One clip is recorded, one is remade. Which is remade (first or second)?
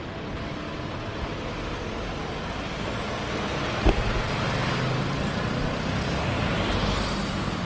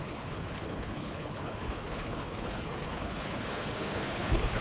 second